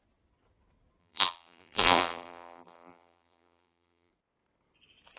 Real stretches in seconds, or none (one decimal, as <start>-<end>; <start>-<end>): 0.0-1.0; 4.1-5.2